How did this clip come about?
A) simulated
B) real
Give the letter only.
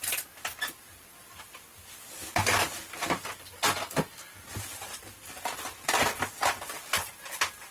B